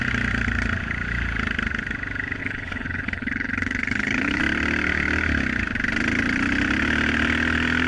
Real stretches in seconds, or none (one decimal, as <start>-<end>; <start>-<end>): 0.0-2.4; 4.4-7.9